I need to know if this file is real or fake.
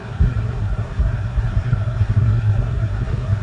fake